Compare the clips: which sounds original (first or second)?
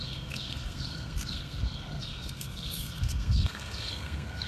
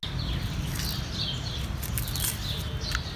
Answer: second